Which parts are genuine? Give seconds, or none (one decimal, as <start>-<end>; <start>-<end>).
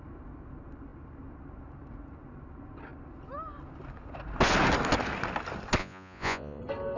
0.0-5.8; 6.6-7.0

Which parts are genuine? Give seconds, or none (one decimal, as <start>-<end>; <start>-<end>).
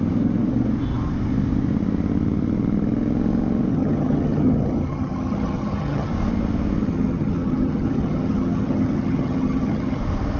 0.0-3.7; 6.1-6.8; 10.0-10.4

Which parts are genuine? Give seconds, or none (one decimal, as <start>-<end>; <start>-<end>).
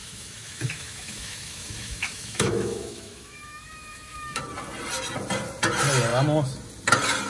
4.4-7.3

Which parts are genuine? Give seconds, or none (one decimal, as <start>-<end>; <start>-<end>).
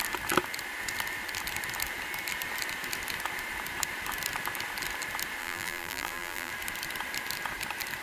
0.0-5.4; 6.5-8.0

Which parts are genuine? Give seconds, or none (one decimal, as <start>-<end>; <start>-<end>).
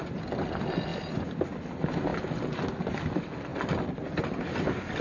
0.0-5.0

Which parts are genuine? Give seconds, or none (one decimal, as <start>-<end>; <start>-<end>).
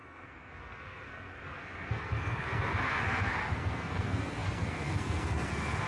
none